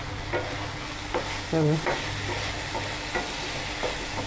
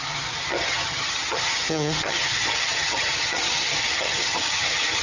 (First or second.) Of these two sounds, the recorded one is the first